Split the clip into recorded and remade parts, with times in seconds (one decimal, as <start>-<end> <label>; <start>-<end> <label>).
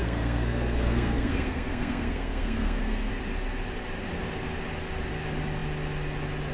0.0-3.1 remade; 3.1-6.5 recorded